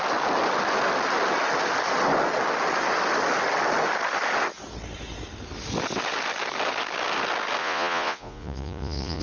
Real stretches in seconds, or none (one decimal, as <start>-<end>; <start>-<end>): 0.0-7.6